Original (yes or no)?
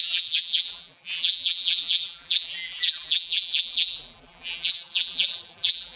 no